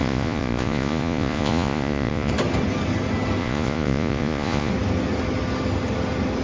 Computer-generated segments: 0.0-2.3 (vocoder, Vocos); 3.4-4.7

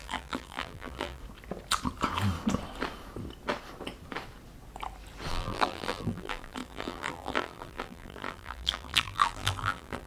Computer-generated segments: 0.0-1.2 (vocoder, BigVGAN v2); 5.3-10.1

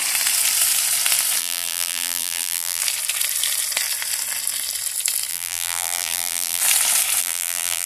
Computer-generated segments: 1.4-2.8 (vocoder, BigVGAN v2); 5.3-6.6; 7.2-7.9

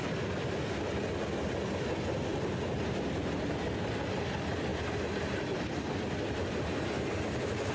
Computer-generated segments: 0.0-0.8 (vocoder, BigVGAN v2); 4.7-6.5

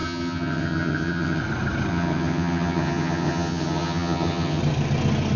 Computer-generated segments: 0.0-1.4 (vocoder, HiFi-GAN); 1.9-4.6

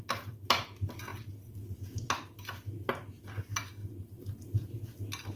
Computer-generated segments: none

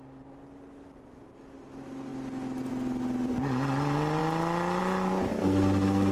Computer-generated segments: 5.3-6.1 (codec, SNAC)

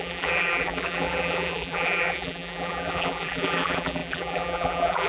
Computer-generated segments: 0.0-5.1 (vocoder, BigVGAN v2)